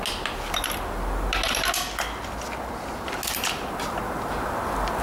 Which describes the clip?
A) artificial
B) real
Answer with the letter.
B